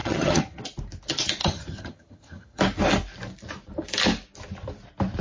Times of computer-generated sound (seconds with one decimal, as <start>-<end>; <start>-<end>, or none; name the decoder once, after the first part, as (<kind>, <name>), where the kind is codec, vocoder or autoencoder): 0.0-0.6 (vocoder, HiFi-GAN); 1.4-2.6